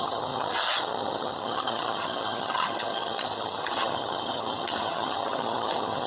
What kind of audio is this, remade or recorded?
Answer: remade